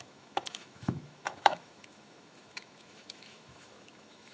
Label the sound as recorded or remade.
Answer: remade